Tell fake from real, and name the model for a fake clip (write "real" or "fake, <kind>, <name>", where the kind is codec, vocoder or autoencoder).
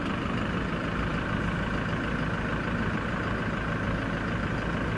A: real